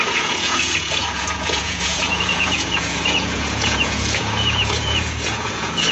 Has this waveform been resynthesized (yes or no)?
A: yes